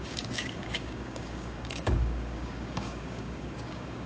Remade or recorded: remade